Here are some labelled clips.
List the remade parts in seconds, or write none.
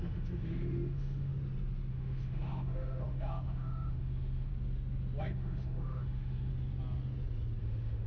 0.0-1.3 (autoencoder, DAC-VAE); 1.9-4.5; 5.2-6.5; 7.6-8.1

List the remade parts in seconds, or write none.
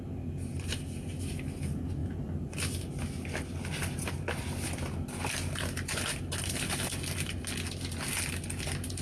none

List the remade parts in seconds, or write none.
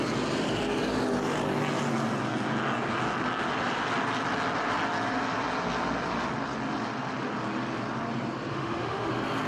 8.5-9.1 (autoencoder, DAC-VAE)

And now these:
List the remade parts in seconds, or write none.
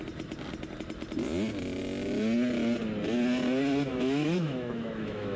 3.9-5.4 (autoencoder, DAC-VAE)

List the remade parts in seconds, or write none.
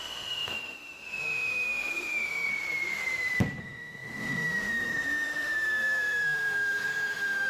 0.0-2.5 (autoencoder, DAC-VAE); 3.6-7.5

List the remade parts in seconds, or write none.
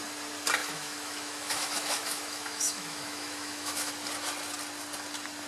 0.6-3.9 (autoencoder, DAC-VAE)